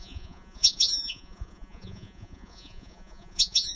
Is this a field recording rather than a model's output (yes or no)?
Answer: no